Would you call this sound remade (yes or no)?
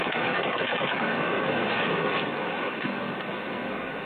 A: yes